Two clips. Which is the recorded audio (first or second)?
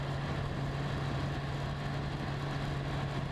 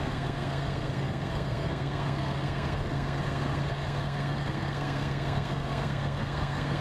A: first